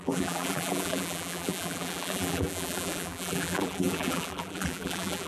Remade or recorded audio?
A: remade